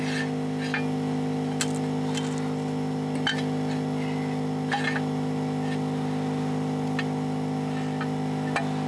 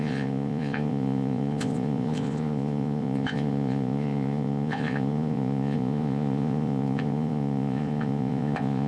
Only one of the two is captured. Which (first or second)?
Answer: first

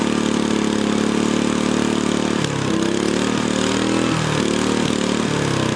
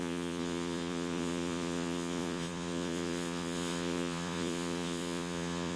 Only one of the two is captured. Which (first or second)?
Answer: first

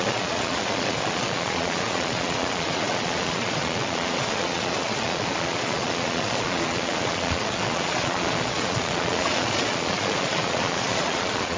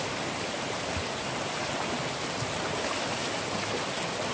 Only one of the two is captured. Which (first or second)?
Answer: second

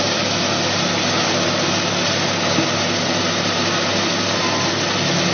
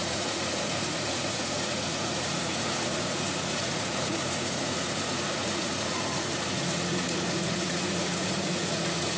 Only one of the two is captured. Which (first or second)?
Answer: first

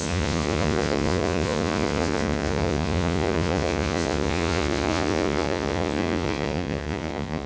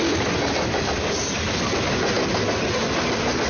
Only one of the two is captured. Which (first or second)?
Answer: second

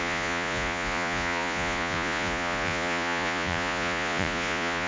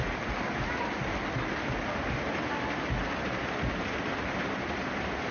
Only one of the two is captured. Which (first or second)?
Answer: second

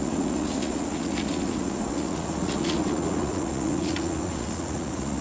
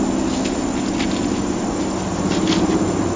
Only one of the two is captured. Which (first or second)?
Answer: second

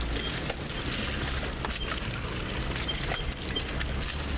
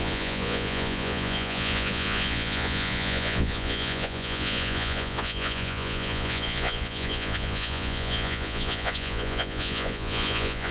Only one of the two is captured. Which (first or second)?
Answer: first